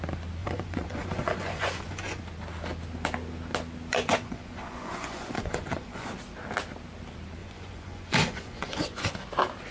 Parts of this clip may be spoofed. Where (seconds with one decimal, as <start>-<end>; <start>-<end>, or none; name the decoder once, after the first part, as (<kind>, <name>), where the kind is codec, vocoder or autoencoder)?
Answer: 0.4-2.2 (vocoder, Vocos); 3.9-6.1; 7.4-9.1